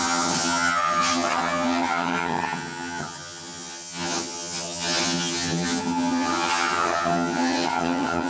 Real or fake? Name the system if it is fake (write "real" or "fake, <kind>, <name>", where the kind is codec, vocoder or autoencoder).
fake, vocoder, HiFi-GAN